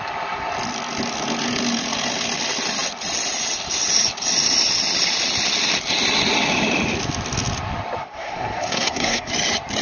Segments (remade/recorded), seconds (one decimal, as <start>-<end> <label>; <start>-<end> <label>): 0.0-8.0 recorded; 8.0-9.3 remade; 9.3-9.8 recorded

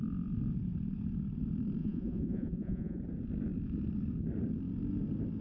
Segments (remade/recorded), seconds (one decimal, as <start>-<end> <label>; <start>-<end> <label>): 0.0-1.8 recorded; 1.8-3.0 remade; 3.0-5.4 recorded

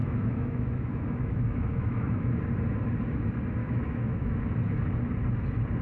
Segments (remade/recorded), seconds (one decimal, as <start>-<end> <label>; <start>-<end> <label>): 0.0-2.4 remade; 2.4-3.6 recorded; 3.6-4.5 remade; 4.5-5.8 recorded

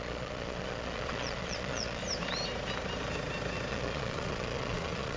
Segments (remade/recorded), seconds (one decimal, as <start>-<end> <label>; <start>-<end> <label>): 0.0-2.0 remade; 2.0-3.7 recorded; 3.7-5.2 remade